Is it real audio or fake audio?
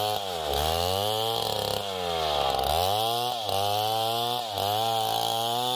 real